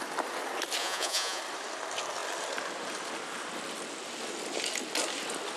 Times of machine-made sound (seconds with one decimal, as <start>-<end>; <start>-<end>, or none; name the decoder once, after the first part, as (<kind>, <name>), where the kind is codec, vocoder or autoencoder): 0.8-1.4 (vocoder, Vocos)

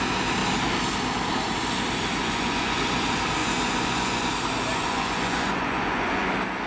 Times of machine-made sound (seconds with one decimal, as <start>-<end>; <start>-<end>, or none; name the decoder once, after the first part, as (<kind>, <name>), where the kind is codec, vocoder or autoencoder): 2.2-2.8 (vocoder, Vocos); 3.4-4.3; 4.7-6.3

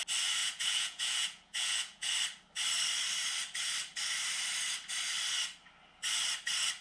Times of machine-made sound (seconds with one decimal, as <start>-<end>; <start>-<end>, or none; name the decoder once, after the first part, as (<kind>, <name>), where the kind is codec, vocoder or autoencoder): 0.4-2.1 (vocoder, Vocos)

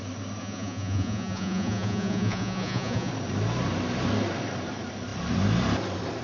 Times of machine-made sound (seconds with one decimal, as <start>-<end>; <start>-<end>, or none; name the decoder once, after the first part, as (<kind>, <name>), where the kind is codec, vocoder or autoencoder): 0.4-3.1 (vocoder, Vocos)

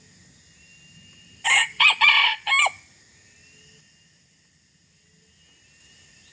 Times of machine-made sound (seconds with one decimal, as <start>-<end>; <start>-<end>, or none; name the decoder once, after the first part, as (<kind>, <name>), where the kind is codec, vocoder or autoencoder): 1.6-2.5 (vocoder, Vocos)